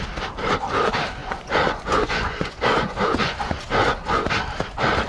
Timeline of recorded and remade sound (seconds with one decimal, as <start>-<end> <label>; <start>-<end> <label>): 0.0-1.2 recorded; 1.2-4.3 remade; 4.3-5.1 recorded